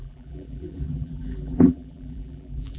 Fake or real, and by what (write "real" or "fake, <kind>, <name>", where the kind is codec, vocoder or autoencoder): fake, vocoder, BigVGAN v2